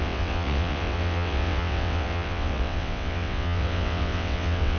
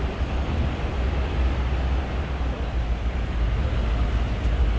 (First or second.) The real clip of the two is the second